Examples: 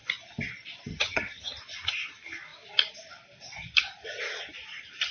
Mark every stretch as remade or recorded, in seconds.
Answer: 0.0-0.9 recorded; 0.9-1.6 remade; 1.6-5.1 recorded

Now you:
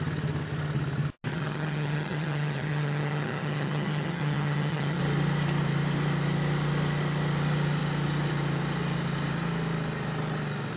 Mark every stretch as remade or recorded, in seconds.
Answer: 0.0-1.3 recorded; 1.3-5.0 remade; 5.0-10.8 recorded

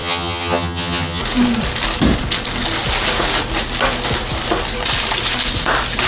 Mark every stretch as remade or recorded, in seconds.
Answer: 0.0-1.2 remade; 1.2-6.1 recorded

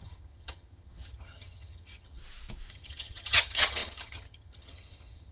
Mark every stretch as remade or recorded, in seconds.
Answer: 0.0-2.2 remade; 2.2-2.7 recorded; 2.7-5.3 remade

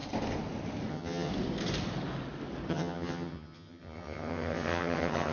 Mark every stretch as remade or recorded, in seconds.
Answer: 0.0-0.9 recorded; 0.9-1.3 remade; 1.3-2.7 recorded; 2.7-5.3 remade